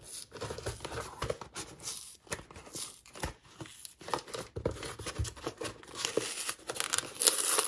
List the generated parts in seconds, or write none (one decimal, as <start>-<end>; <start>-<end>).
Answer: 3.7-4.4